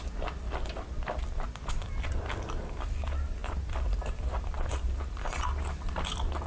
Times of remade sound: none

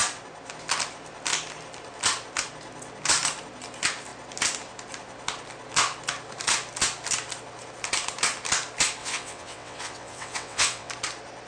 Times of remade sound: 9.0-10.9 (vocoder, WaveNeXt)

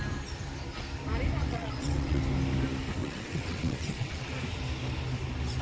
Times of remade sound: 1.4-2.2 (vocoder, WaveNeXt); 3.0-4.3